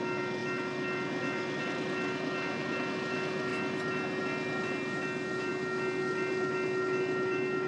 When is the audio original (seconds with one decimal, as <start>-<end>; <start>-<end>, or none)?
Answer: 0.0-7.7